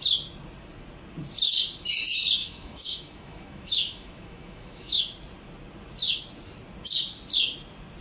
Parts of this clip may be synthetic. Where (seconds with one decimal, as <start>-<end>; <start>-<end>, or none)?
2.4-5.0